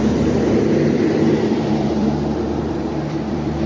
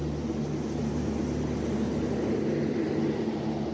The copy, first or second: first